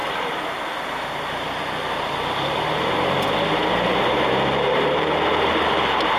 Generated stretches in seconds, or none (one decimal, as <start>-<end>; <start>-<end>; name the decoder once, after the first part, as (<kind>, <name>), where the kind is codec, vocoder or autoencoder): 3.7-6.2 (vocoder, BigVGAN v2)